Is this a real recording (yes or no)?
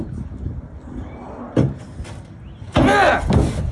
yes